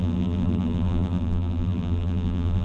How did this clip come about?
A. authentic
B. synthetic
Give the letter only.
B